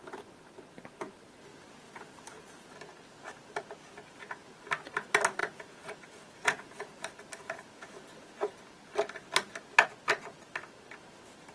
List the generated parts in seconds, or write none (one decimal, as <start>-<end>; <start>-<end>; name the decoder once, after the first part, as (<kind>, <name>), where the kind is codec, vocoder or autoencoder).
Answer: 5.4-7.0 (vocoder, Vocos)